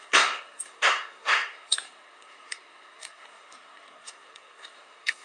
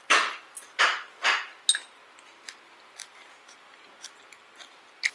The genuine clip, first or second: second